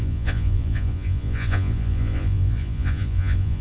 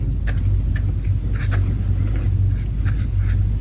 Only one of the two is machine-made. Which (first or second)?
first